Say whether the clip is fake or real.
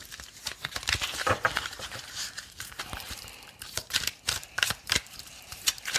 fake